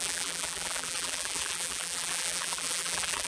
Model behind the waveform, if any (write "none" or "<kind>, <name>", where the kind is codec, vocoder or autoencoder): vocoder, BigVGAN v2